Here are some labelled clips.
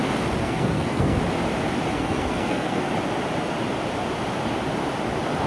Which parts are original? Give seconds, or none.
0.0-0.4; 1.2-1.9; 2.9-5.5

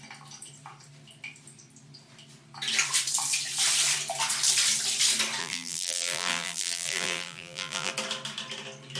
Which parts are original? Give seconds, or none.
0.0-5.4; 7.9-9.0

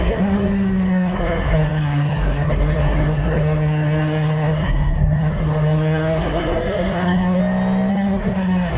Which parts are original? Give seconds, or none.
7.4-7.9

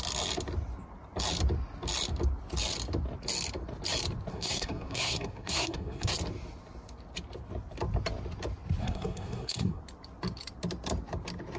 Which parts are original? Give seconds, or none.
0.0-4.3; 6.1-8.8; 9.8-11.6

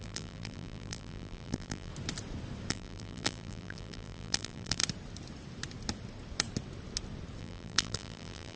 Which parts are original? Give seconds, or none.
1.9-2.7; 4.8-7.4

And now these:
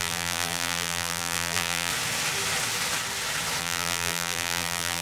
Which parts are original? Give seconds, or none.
1.9-3.6